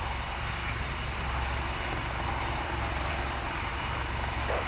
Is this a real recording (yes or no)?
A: no